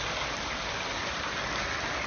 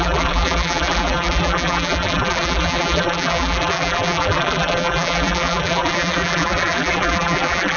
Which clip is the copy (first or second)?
second